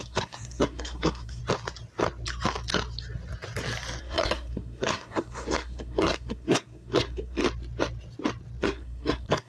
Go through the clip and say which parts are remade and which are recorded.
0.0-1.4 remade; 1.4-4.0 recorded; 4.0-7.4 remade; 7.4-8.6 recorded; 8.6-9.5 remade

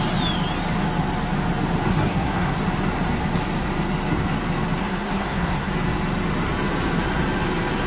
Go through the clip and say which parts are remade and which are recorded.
0.0-1.9 recorded; 1.9-2.6 remade; 2.6-4.8 recorded; 4.8-5.7 remade; 5.7-7.9 recorded

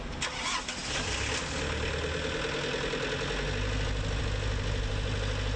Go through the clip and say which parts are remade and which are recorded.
0.0-5.6 recorded

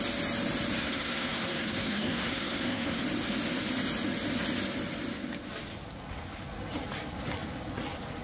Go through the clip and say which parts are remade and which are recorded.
0.0-0.8 recorded; 0.8-3.0 remade; 3.0-8.2 recorded